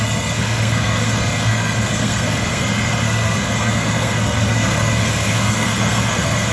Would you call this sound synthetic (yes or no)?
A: yes